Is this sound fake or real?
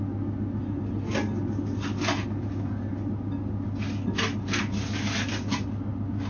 real